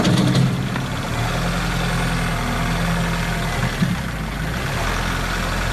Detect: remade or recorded recorded